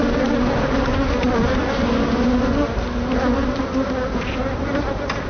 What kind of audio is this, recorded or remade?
recorded